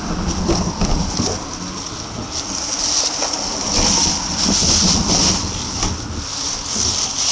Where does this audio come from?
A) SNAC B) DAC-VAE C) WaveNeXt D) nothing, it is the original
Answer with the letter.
D